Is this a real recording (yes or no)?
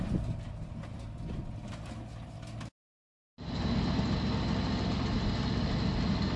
yes